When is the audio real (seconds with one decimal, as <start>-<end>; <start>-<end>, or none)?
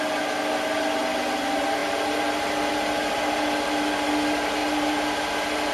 0.0-1.8; 2.7-4.6